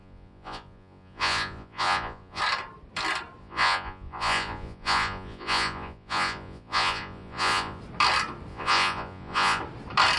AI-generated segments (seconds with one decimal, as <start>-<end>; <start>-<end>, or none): 0.0-2.4; 3.4-7.8; 8.5-9.6